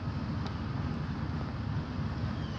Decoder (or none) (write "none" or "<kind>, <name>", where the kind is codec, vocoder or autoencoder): none